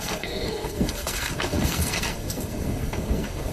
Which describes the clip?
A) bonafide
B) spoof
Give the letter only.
B